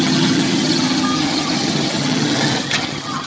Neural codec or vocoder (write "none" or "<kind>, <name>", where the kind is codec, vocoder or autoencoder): vocoder, HiFi-GAN